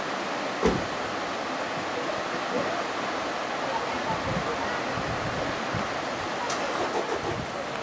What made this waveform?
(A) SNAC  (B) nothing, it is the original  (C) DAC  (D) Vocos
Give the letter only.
B